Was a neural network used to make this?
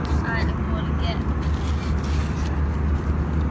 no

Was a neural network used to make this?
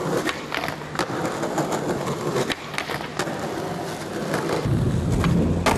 no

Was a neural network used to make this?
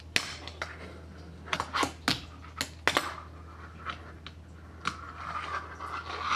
no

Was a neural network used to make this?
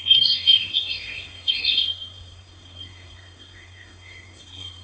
yes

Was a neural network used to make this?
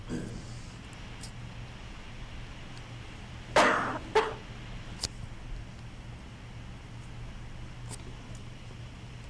no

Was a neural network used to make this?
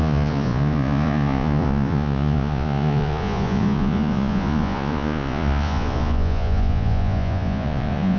yes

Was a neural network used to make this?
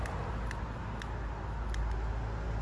no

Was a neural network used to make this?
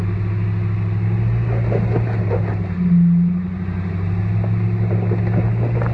no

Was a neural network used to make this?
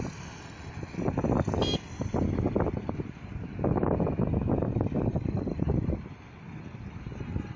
no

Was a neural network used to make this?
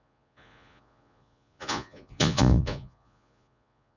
yes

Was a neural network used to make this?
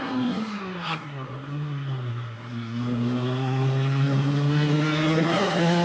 yes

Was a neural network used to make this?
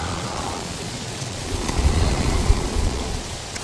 yes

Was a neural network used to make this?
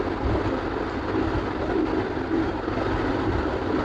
no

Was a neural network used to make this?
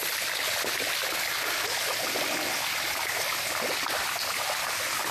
no